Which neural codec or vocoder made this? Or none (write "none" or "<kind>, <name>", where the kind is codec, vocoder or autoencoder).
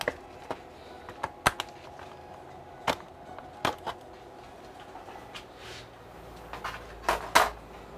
none